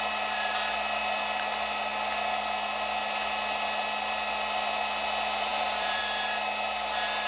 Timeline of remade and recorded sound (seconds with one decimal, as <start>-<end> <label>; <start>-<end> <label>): 0.0-5.5 recorded; 5.5-6.0 remade; 6.0-7.3 recorded